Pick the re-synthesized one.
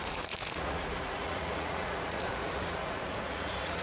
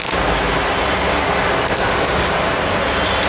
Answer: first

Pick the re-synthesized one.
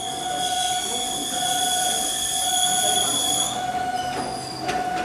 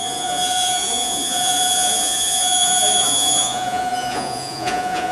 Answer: second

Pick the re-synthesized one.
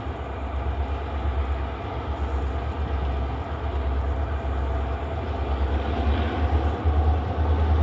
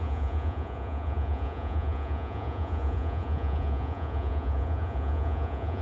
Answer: second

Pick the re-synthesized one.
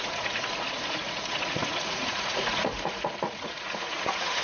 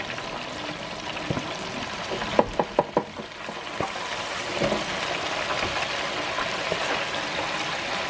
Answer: first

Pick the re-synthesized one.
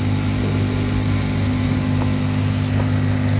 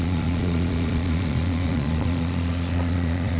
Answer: second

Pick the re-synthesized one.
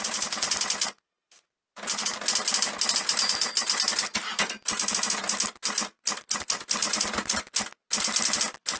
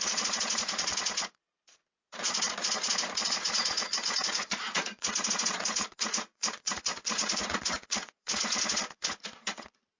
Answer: second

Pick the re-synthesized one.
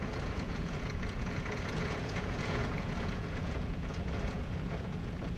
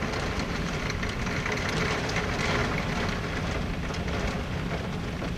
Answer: first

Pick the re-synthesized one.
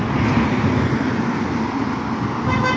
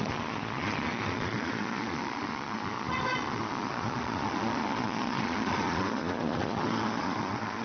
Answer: second